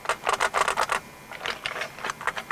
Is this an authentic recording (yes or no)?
yes